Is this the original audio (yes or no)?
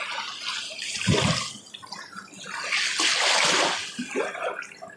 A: yes